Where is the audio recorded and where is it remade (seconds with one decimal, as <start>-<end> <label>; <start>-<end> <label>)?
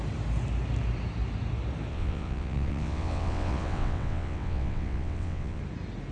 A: 0.0-1.9 recorded; 1.9-5.6 remade; 5.6-6.1 recorded